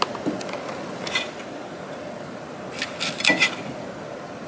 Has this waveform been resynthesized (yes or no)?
no